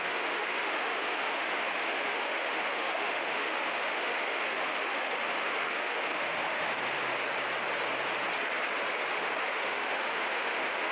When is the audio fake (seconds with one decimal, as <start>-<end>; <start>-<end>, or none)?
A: 0.0-6.8; 9.2-10.9